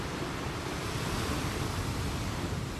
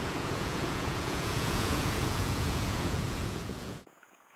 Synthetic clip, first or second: second